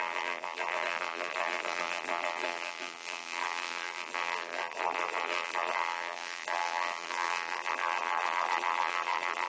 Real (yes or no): no